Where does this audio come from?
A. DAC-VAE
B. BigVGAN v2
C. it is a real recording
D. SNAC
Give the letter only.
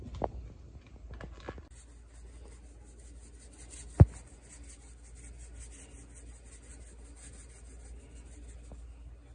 C